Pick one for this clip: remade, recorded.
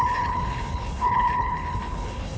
remade